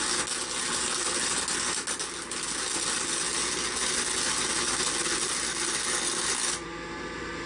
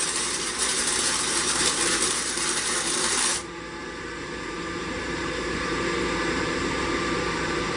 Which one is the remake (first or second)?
second